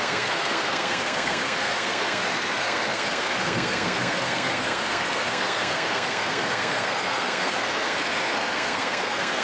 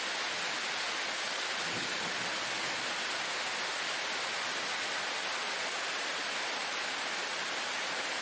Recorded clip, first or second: second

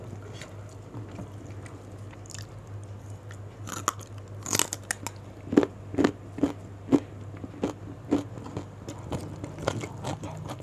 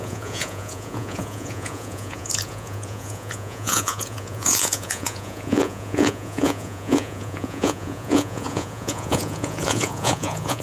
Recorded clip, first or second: first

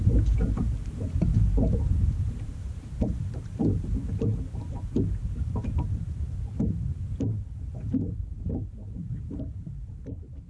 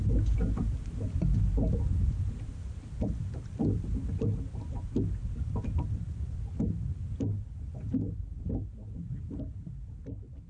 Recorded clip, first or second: second